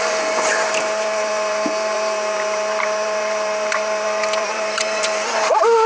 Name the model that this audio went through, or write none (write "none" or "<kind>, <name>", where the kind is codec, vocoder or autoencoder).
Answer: vocoder, BigVGAN v2